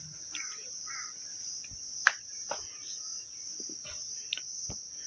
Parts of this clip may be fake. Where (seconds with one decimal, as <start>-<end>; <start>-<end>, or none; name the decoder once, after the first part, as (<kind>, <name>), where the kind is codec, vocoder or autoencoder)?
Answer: none